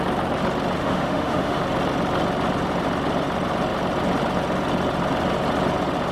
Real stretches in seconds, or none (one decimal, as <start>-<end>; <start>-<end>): 0.0-0.8; 1.6-6.1